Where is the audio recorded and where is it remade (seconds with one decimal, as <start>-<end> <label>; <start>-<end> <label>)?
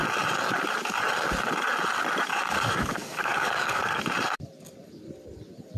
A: 0.0-2.3 recorded; 2.3-3.8 remade; 3.8-5.8 recorded